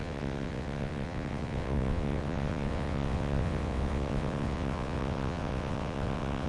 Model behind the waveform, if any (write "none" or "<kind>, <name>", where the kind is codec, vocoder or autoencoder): vocoder, WaveNeXt